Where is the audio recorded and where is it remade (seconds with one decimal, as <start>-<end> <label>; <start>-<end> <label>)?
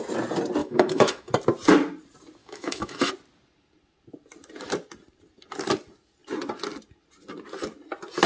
0.0-0.6 recorded; 0.6-1.3 remade; 1.3-2.4 recorded; 2.4-3.1 remade; 3.1-8.3 recorded